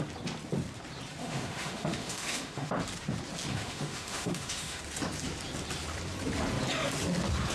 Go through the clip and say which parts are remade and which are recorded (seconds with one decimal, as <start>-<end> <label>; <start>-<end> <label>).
0.0-1.2 recorded; 1.2-2.7 remade; 2.7-3.5 recorded; 3.5-4.8 remade; 4.8-7.5 recorded